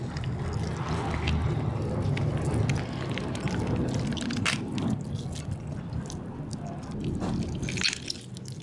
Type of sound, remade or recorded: recorded